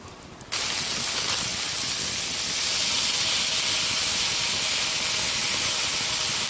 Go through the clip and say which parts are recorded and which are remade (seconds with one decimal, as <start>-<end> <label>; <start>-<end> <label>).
0.0-1.5 recorded; 1.5-2.3 remade; 2.3-6.5 recorded